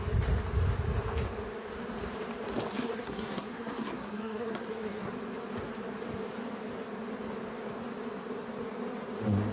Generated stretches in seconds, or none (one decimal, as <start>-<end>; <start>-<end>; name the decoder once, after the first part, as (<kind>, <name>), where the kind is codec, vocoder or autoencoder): 2.7-5.1 (codec, SNAC)